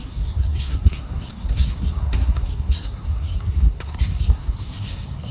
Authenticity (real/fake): fake